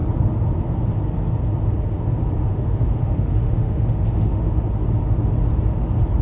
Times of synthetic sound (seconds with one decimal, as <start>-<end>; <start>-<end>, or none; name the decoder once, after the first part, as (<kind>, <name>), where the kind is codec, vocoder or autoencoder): 2.5-4.4 (autoencoder, DAC-VAE)